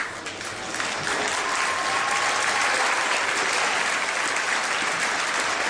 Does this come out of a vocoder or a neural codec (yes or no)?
no